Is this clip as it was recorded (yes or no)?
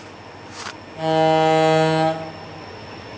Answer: yes